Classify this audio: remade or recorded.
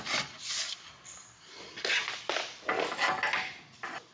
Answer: recorded